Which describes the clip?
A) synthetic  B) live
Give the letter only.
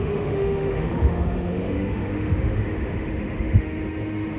A